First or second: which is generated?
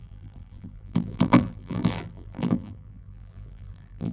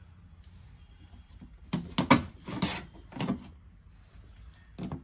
first